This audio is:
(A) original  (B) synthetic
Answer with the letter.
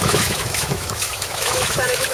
B